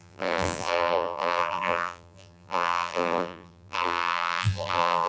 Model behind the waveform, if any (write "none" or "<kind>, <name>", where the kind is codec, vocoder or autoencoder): vocoder, BigVGAN v2